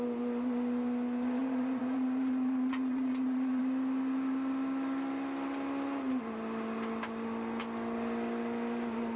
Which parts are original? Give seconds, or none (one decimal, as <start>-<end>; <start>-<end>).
0.0-1.4; 3.6-9.2